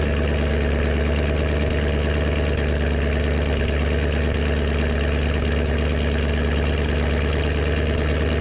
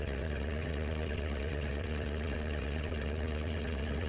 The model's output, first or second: second